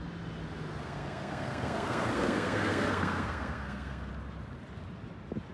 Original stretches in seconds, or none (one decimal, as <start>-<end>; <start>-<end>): 0.0-0.8; 4.1-5.5